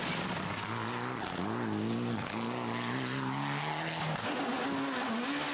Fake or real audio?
real